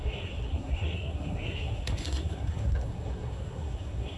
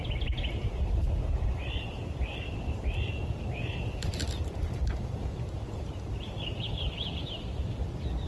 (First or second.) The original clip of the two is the second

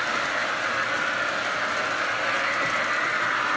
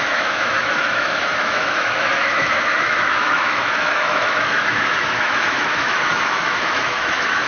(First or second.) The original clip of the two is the first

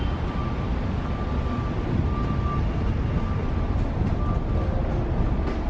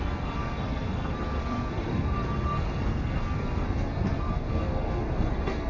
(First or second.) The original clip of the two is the first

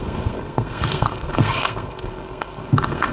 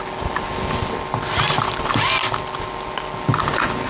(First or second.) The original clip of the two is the second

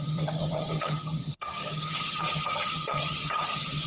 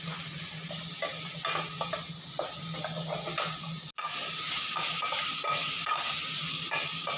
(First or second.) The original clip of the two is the second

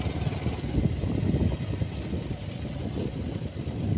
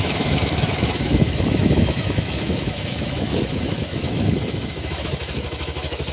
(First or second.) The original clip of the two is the first